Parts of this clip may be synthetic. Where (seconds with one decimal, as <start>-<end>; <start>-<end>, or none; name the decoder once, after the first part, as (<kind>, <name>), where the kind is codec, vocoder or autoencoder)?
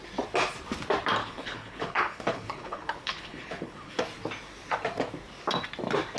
1.2-4.0 (codec, HILCodec)